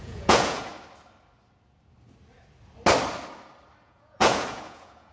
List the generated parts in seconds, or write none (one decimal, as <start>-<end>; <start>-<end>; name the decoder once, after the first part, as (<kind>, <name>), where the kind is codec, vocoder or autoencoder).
0.0-0.7 (vocoder, Vocos); 3.8-5.1